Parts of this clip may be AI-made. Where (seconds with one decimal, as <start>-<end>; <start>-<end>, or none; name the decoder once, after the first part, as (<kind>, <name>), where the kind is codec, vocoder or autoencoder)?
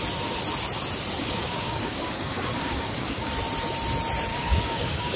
1.2-3.3 (codec, DAC); 4.3-5.2